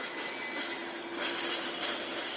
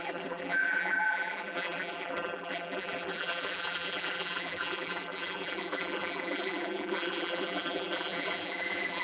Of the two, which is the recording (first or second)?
first